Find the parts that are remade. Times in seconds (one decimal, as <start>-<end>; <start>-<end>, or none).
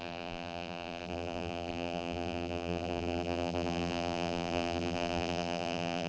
0.0-6.1